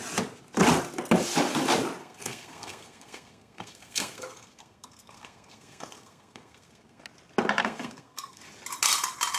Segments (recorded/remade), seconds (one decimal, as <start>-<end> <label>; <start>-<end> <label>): 0.0-2.0 recorded; 2.0-7.0 remade; 7.0-7.6 recorded; 7.6-8.4 remade; 8.4-9.4 recorded